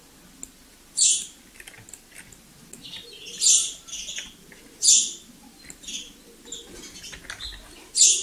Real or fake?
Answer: real